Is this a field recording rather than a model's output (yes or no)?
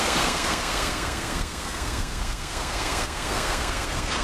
no